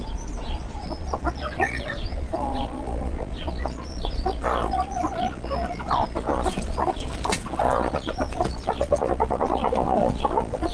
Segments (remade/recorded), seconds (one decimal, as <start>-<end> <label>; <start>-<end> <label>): 0.0-10.7 remade